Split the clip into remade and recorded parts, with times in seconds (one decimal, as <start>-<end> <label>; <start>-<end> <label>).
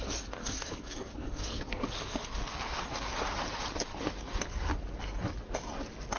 0.0-0.4 recorded; 0.4-2.8 remade; 2.8-6.2 recorded